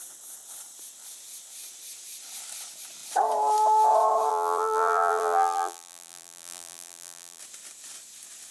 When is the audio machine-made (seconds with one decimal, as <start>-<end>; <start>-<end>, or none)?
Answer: 4.3-7.4